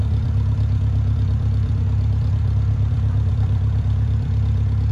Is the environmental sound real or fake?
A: fake